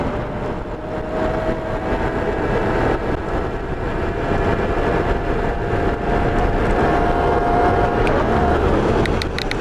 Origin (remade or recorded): recorded